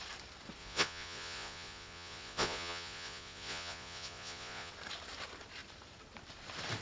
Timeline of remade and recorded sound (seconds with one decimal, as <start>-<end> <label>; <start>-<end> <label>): 0.0-0.6 recorded; 0.6-4.7 remade; 4.7-6.8 recorded